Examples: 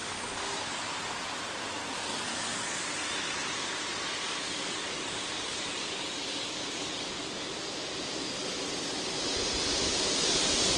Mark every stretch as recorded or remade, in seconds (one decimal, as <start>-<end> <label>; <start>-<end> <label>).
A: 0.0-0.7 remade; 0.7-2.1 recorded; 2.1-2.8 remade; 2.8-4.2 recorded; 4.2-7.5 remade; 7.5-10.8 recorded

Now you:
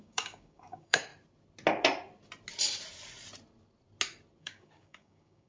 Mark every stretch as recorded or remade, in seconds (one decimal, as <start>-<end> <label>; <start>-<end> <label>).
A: 0.0-1.1 remade; 1.1-4.4 recorded; 4.4-5.5 remade

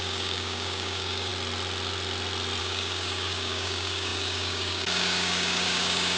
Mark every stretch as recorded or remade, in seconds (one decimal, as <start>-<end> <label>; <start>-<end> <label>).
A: 0.0-1.3 remade; 1.3-2.6 recorded; 2.6-6.2 remade

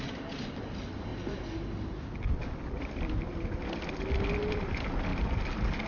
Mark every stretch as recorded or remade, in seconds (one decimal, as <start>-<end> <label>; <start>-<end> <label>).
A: 0.0-5.9 recorded

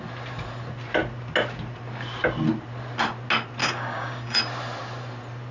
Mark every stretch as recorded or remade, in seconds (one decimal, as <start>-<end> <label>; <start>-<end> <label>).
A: 0.0-3.6 recorded; 3.6-4.4 remade; 4.4-5.5 recorded

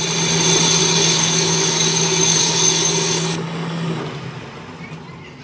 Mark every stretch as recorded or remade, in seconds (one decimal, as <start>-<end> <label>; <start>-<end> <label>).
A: 0.0-0.8 recorded; 0.8-4.0 remade; 4.0-5.4 recorded

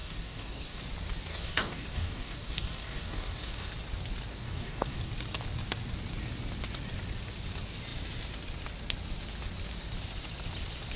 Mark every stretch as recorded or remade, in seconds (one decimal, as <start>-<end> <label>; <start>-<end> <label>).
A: 0.0-0.8 remade; 0.8-1.3 recorded; 1.3-3.7 remade; 3.7-4.3 recorded; 4.3-5.1 remade; 5.1-11.0 recorded